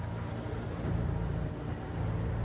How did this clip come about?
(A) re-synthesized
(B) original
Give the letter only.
B